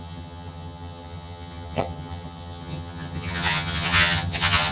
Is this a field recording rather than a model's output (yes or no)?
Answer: no